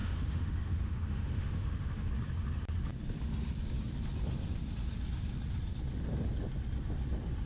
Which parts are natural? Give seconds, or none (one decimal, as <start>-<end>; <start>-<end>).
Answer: 2.1-7.5